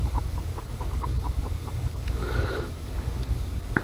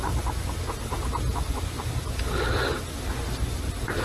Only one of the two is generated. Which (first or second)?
first